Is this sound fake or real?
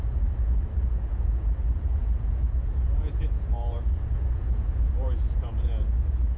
fake